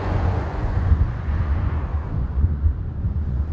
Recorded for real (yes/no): no